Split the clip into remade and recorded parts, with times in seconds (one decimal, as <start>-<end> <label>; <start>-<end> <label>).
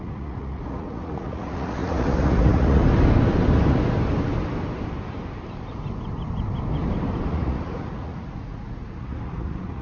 0.0-2.8 remade; 2.8-7.3 recorded; 7.3-9.8 remade